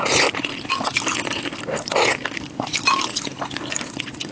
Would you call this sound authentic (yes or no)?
yes